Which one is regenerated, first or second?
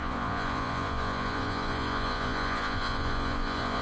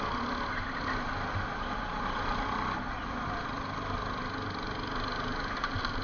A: first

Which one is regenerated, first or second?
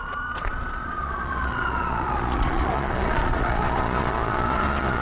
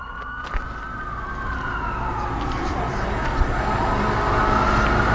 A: first